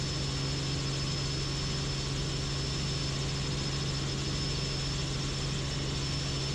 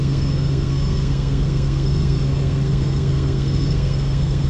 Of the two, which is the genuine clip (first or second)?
first